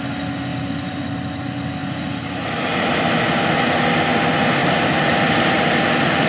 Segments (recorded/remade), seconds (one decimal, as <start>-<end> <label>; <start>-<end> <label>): 0.0-0.5 recorded; 0.5-1.1 remade; 1.1-1.8 recorded; 1.8-3.5 remade; 3.5-4.6 recorded; 4.6-5.6 remade; 5.6-6.3 recorded